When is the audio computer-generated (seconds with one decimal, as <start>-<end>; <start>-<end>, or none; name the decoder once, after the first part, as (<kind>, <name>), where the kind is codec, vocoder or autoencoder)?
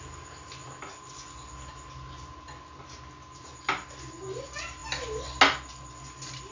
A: none